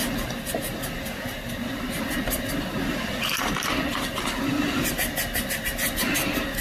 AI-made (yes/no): no